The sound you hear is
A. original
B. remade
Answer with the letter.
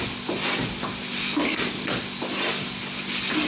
A